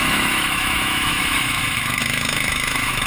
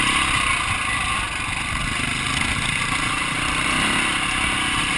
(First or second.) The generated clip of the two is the first